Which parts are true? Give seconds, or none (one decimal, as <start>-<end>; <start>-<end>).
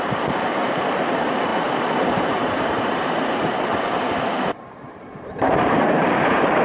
none